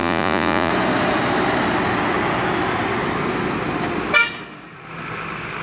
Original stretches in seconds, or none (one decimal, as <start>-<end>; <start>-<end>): 0.7-5.6